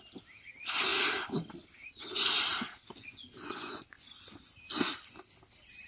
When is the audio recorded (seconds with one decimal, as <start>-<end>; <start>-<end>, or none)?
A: 0.0-3.0; 4.1-5.9

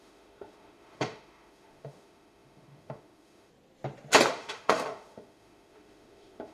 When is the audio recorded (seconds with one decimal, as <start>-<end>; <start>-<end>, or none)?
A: 3.5-4.3

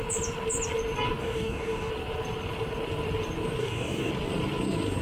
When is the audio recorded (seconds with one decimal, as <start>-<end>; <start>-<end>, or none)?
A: 0.0-1.2; 1.9-3.6; 4.1-5.0

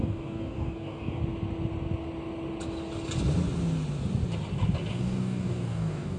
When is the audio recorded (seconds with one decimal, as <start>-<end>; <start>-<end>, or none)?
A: 1.2-4.9

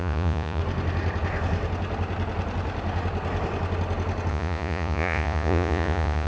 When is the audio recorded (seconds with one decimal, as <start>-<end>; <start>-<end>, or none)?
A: 0.6-4.3

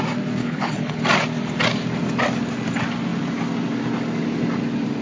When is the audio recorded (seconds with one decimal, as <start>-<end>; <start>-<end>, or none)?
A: 0.0-0.4; 1.0-5.0

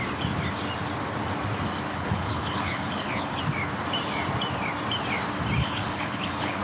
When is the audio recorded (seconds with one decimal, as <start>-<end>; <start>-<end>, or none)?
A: 0.0-1.9; 3.4-5.6

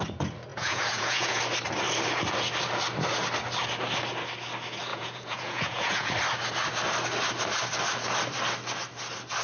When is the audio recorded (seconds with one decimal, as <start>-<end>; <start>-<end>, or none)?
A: 0.0-0.5; 1.4-4.9; 6.1-9.4